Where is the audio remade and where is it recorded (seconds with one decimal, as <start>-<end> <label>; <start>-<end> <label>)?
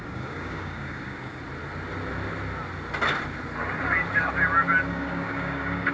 0.0-1.4 remade; 1.4-4.9 recorded; 4.9-5.9 remade